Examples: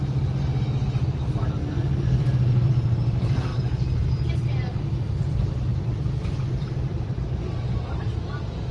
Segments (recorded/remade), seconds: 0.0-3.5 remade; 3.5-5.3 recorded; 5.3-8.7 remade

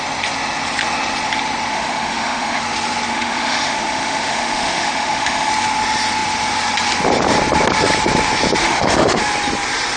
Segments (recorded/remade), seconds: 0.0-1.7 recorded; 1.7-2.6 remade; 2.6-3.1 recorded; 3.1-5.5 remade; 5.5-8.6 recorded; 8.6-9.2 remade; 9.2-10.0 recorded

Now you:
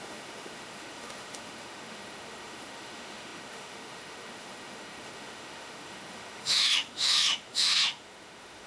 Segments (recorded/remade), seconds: 0.0-8.7 remade

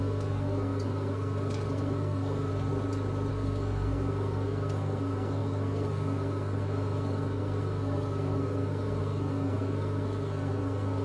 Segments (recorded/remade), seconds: 0.0-2.5 remade; 2.5-3.3 recorded; 3.3-11.0 remade

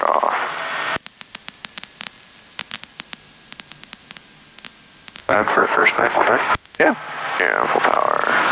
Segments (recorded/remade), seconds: 0.0-5.2 recorded; 5.2-6.9 remade; 6.9-8.5 recorded

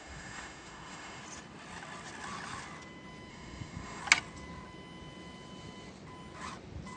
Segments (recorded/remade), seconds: 0.0-1.2 remade; 1.2-3.3 recorded; 3.3-4.0 remade; 4.0-7.0 recorded

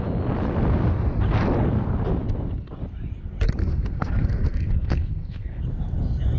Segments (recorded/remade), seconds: 0.0-3.6 recorded; 3.6-5.6 remade; 5.6-6.4 recorded

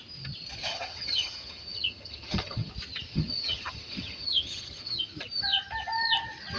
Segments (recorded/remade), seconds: 0.0-0.7 recorded; 0.7-2.7 remade; 2.7-3.1 recorded; 3.1-5.0 remade; 5.0-6.6 recorded